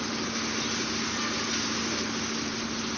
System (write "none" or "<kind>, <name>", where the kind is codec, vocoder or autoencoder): none